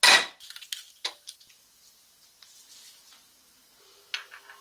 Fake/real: real